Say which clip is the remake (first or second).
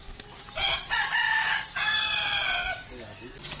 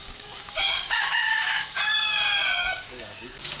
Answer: second